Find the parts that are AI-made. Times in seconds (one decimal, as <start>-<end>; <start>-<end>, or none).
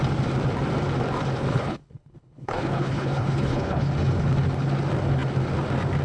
1.5-3.9